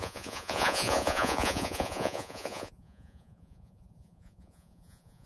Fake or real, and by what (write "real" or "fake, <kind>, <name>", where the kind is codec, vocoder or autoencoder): fake, vocoder, Vocos